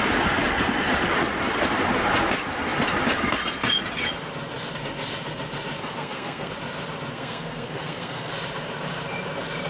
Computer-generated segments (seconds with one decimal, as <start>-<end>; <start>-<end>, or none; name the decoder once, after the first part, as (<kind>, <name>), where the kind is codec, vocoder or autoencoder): 5.8-6.5 (codec, SNAC); 7.1-8.3